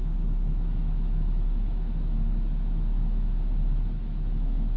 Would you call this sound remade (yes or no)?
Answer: yes